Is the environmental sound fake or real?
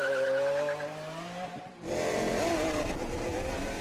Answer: fake